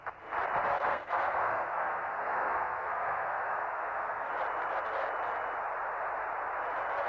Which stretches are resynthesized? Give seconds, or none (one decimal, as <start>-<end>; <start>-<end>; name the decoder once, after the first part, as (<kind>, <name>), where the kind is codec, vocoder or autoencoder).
0.9-4.3 (codec, SNAC)